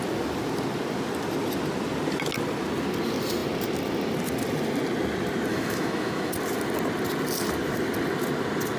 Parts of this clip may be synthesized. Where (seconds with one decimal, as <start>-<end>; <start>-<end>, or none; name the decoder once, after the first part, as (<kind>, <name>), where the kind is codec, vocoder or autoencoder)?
5.5-6.3 (autoencoder, DAC-VAE)